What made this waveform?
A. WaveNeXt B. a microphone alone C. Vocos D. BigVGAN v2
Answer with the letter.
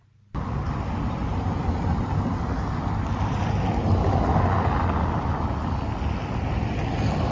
B